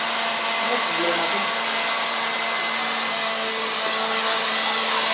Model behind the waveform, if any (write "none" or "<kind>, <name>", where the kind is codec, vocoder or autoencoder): none